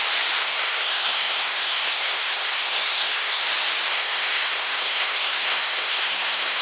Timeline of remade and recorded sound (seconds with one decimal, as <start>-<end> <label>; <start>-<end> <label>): 0.0-0.4 recorded; 0.4-3.4 remade; 3.4-3.9 recorded; 3.9-6.6 remade